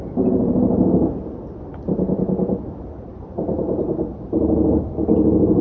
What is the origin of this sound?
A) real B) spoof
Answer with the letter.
B